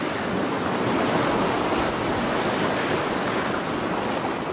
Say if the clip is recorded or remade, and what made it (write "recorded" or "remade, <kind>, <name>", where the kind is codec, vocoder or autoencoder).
recorded